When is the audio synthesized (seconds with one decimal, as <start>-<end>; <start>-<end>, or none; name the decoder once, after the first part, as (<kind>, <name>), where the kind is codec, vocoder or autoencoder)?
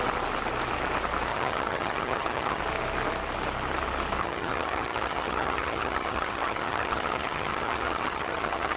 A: 1.3-2.6 (vocoder, HiFi-GAN); 4.2-8.8